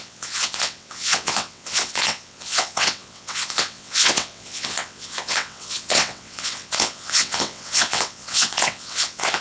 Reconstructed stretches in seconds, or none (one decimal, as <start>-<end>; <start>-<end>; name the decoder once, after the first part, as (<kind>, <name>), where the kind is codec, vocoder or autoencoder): 0.0-9.4 (vocoder, WaveNeXt)